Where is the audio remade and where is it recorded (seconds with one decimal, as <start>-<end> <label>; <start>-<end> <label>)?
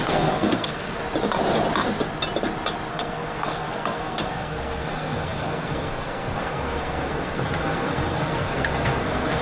0.0-1.0 remade; 1.0-2.9 recorded; 2.9-9.4 remade